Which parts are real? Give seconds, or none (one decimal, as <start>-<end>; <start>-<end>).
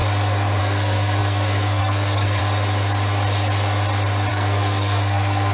0.0-0.6; 2.4-4.3